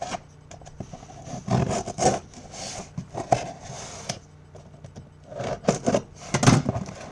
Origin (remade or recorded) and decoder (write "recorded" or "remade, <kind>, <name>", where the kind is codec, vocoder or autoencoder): recorded